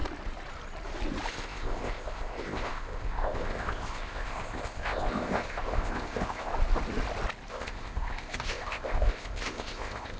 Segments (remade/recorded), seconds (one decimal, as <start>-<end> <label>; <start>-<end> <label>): 0.0-1.3 recorded; 1.3-6.5 remade; 6.5-7.5 recorded; 7.5-10.2 remade